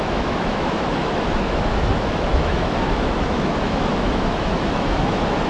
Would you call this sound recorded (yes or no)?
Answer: no